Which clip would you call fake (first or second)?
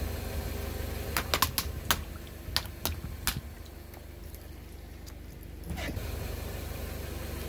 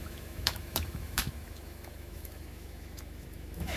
second